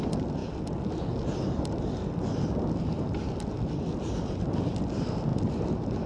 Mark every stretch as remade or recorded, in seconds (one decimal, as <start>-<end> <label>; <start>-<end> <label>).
0.0-6.1 recorded